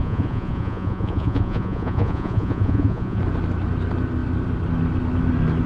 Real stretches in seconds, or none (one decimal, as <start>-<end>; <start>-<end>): 3.2-5.7